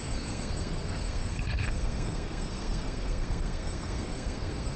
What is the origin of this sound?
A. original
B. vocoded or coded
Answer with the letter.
B